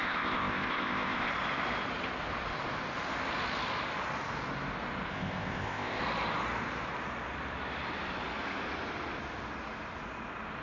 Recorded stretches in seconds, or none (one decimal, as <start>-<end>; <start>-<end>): 1.3-5.1; 6.0-10.6